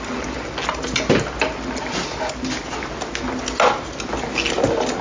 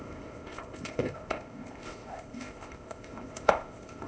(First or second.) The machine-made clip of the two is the second